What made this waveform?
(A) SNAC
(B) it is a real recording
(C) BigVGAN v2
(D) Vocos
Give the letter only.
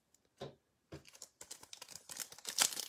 B